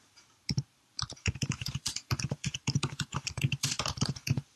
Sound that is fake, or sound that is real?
fake